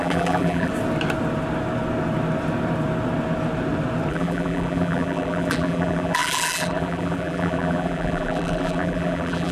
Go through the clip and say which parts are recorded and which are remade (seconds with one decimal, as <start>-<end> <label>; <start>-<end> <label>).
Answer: 0.0-0.7 remade; 0.7-4.1 recorded; 4.1-9.5 remade